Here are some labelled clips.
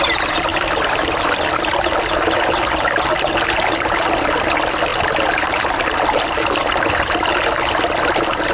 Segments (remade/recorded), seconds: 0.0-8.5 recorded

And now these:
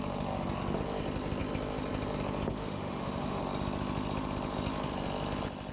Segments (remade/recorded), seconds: 0.0-2.6 recorded; 2.6-3.4 remade; 3.4-5.7 recorded

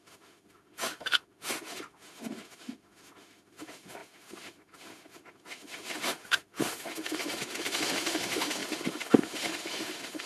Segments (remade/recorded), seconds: 0.0-10.3 remade

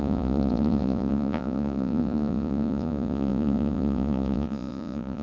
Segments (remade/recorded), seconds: 0.0-5.2 remade

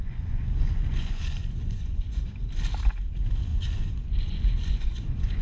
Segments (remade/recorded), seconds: 0.0-2.2 remade; 2.2-3.5 recorded; 3.5-5.4 remade

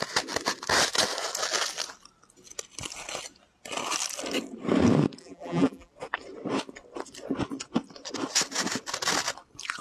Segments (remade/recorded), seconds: 0.0-5.2 recorded; 5.2-5.9 remade; 5.9-9.8 recorded